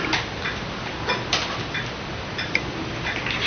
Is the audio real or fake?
real